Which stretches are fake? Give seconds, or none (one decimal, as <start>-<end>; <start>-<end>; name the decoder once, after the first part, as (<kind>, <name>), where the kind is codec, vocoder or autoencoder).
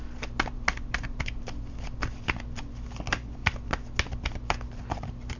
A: none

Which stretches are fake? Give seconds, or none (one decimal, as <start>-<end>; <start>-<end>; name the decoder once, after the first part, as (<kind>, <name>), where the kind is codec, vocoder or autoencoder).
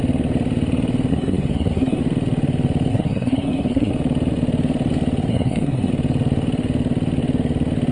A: 1.1-2.0 (codec, SNAC); 2.9-3.9; 5.3-5.9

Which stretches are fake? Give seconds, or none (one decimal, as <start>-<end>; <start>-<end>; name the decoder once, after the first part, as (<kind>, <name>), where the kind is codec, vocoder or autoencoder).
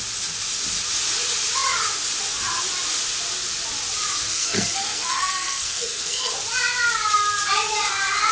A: 4.3-6.3 (codec, SNAC)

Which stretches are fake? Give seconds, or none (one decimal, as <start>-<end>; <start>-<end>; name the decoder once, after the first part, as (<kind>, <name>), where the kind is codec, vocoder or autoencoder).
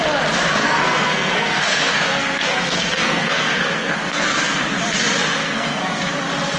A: 0.6-4.6 (codec, SNAC); 5.4-6.1